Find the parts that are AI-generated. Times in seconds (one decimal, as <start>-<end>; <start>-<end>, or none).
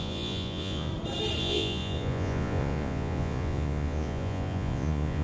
0.0-0.9; 1.4-5.2